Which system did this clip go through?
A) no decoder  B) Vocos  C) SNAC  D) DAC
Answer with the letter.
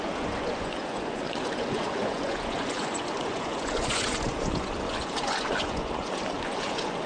B